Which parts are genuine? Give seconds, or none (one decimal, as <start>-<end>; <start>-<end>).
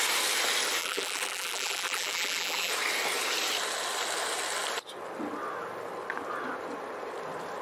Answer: 0.0-0.8; 2.7-7.6